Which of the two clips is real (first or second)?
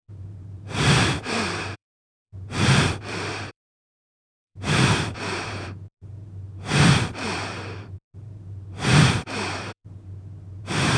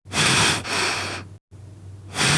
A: second